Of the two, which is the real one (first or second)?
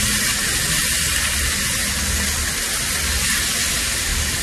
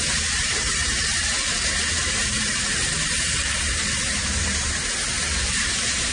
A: first